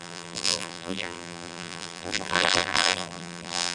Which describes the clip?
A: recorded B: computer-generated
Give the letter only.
B